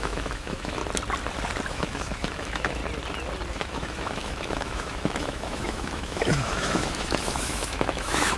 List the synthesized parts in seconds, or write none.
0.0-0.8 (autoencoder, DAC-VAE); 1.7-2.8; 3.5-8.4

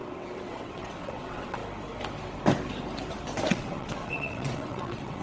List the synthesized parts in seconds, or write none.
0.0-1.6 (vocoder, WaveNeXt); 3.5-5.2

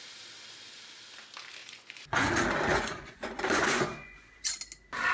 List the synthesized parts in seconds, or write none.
1.6-2.3 (vocoder, Vocos); 2.7-4.4